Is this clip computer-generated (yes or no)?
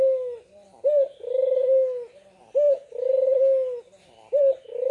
no